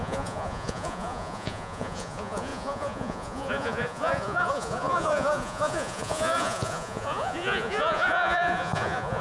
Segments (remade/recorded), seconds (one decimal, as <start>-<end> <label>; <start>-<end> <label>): 0.0-9.2 remade